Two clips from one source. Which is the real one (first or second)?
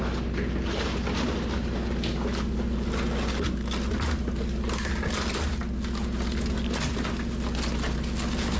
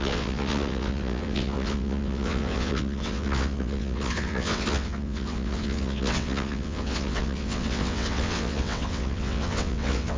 first